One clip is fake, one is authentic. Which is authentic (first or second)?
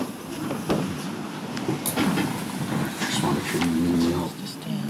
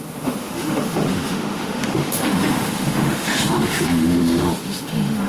first